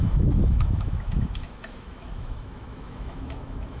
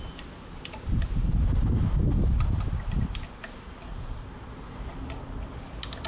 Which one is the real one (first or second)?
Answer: second